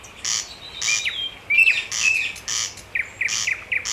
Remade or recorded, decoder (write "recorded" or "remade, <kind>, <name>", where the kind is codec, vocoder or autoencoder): recorded